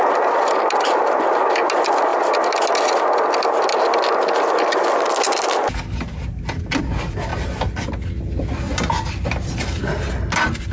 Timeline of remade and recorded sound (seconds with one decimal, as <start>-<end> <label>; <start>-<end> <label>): 0.0-10.7 recorded